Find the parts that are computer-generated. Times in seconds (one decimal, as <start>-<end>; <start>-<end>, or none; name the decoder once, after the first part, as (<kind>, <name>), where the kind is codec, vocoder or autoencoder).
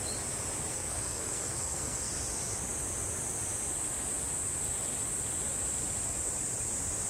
0.7-2.1 (codec, SNAC)